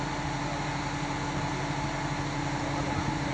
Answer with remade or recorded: recorded